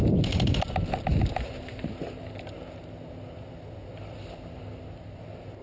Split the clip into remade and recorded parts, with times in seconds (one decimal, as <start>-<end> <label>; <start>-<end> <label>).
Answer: 0.0-5.6 recorded